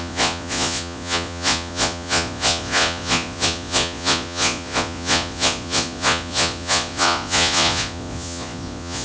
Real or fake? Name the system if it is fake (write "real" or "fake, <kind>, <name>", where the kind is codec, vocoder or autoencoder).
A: fake, vocoder, Vocos